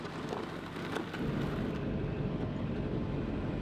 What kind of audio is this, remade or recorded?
recorded